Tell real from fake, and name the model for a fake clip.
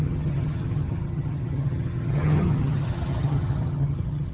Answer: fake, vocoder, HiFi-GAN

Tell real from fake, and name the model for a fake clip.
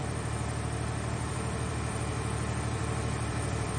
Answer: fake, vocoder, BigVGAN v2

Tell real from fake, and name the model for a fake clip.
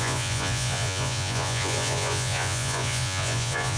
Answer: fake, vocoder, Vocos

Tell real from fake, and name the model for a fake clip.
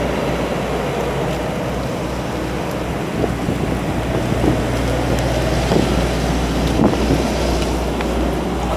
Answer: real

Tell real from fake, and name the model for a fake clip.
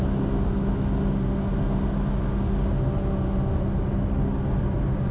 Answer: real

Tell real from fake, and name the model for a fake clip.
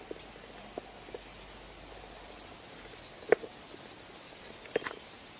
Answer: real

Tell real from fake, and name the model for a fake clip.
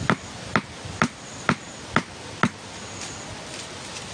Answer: real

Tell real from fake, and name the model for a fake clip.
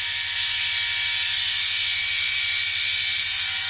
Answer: real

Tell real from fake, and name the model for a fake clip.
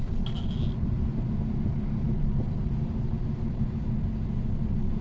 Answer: real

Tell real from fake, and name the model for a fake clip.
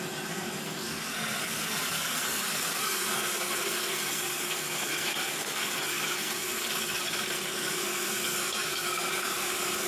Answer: fake, codec, SNAC